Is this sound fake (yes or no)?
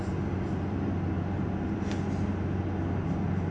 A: no